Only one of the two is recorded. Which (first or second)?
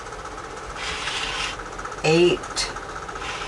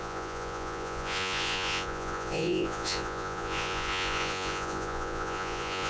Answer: first